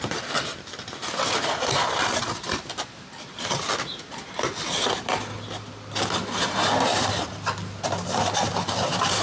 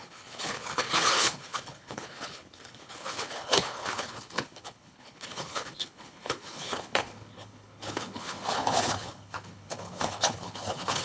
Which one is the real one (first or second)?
first